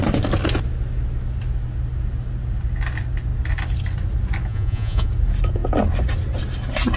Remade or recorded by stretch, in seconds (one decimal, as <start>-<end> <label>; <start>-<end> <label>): 0.0-4.5 recorded; 4.5-5.1 remade; 5.1-7.0 recorded